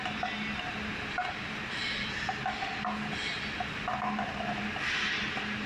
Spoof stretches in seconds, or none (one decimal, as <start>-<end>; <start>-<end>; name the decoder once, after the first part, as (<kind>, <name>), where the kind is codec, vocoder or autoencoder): none

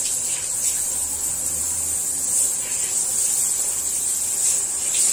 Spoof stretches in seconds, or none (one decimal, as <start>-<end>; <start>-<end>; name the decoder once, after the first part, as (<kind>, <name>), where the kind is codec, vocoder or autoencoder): none